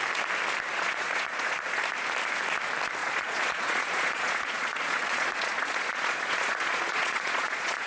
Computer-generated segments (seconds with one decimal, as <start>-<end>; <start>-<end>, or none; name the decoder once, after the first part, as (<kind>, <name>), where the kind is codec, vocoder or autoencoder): 0.7-1.8 (vocoder, Vocos); 3.0-7.9